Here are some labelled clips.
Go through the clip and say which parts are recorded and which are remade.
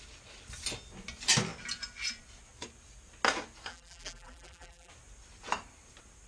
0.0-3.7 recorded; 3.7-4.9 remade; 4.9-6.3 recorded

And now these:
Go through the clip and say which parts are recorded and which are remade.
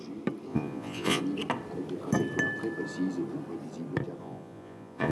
0.0-0.5 recorded; 0.5-1.2 remade; 1.2-4.2 recorded; 4.2-5.1 remade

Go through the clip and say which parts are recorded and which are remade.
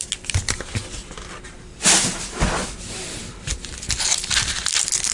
0.0-5.1 recorded